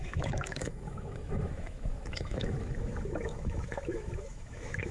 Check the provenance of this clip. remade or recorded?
remade